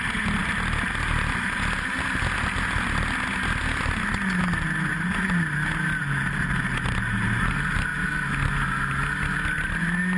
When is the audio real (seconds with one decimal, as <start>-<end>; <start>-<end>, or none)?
0.0-10.2